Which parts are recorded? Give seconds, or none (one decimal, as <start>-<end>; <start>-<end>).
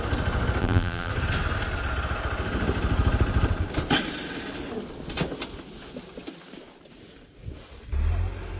0.0-0.6; 1.1-8.6